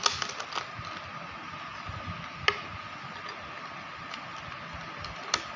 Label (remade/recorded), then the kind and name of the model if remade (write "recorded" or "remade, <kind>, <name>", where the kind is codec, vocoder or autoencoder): recorded